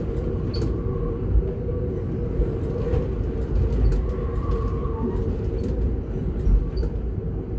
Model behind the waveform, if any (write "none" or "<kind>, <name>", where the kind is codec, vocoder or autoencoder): none